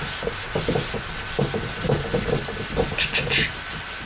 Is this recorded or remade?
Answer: recorded